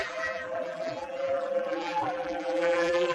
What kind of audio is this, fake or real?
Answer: fake